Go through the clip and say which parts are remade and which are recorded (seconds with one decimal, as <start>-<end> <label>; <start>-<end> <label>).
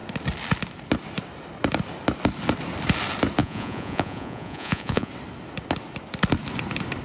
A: 0.0-3.4 recorded; 3.4-5.1 remade; 5.1-7.0 recorded